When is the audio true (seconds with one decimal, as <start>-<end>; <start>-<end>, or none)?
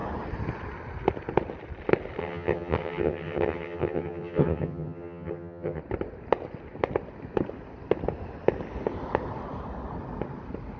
0.0-2.2; 5.8-10.8